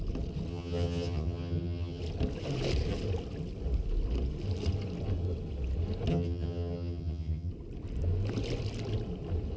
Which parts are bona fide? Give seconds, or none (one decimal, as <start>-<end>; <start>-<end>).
0.0-0.5; 2.0-6.1; 7.5-9.6